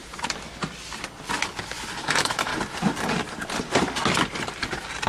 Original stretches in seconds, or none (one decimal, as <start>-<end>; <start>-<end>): 0.0-2.0; 2.5-5.1